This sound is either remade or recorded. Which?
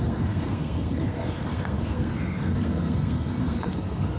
remade